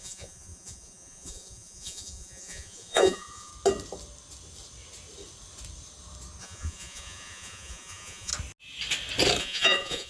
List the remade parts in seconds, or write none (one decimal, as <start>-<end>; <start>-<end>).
0.0-3.5; 6.4-8.3; 9.4-10.1